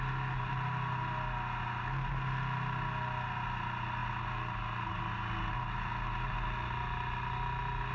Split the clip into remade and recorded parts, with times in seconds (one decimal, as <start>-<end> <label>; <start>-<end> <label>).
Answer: 0.0-7.9 recorded